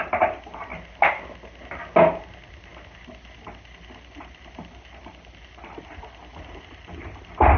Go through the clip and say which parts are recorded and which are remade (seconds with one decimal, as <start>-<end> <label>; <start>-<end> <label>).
0.0-7.6 recorded